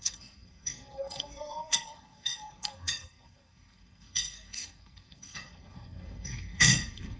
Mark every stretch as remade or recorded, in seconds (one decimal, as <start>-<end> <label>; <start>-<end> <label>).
0.0-7.2 remade